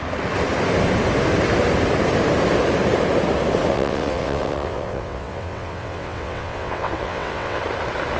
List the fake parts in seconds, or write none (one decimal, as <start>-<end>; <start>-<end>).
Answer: 3.7-7.6